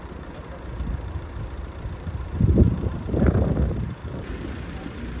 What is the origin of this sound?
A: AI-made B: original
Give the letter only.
A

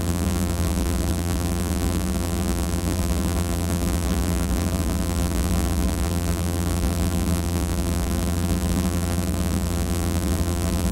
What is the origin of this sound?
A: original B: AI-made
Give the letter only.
B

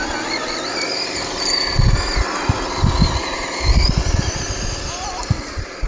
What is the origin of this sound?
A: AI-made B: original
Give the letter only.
B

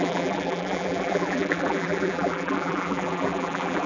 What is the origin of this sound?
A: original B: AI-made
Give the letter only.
B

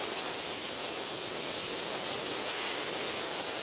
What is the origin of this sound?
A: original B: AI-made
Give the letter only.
A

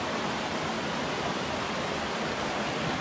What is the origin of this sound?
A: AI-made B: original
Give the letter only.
B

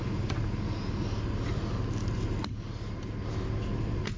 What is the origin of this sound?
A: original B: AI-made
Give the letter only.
A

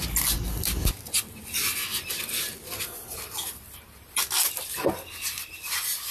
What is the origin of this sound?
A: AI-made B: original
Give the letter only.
B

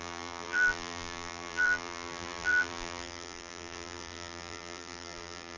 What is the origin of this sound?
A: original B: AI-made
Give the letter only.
B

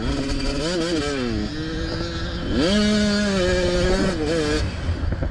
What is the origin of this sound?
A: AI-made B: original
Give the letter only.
B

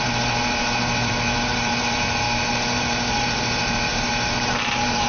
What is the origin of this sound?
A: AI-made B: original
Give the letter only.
A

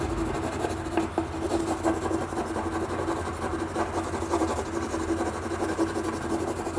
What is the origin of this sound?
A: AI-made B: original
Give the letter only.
B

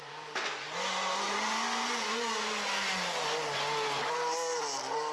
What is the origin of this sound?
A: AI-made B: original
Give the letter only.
B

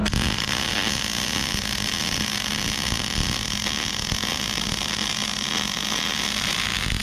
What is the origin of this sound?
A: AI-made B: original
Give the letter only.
B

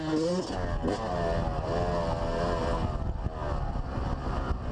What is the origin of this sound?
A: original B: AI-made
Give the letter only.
A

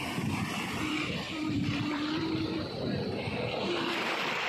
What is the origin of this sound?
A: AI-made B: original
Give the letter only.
A